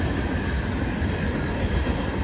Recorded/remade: recorded